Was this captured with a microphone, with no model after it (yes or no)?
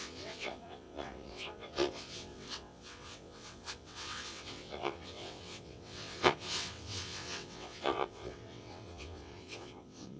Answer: no